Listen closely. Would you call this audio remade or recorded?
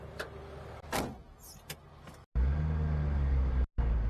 recorded